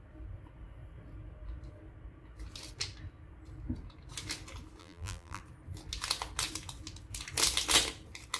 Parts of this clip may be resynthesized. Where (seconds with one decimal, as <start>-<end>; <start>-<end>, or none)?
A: 4.8-5.4